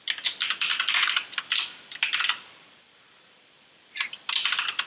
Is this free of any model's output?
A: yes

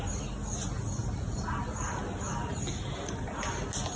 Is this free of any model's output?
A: yes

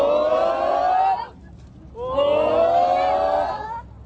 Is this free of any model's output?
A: yes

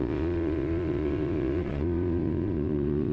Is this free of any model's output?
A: no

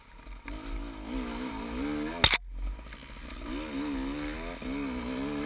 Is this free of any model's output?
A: yes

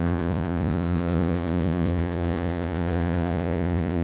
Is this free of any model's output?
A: no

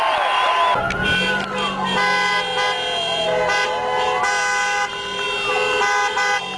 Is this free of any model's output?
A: yes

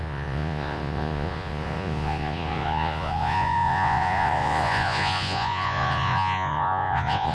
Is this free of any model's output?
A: no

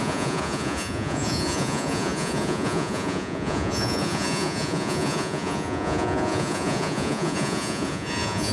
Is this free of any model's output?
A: no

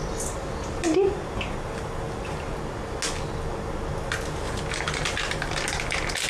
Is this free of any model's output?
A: yes